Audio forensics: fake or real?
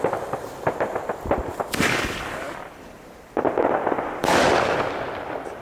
fake